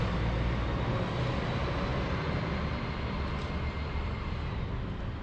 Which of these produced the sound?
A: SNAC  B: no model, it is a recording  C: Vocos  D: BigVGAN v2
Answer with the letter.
B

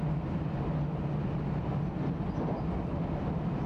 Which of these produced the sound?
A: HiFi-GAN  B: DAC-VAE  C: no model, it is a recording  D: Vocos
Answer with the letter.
C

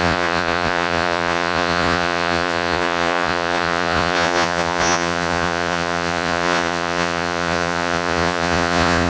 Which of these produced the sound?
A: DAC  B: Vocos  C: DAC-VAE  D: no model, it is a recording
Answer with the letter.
B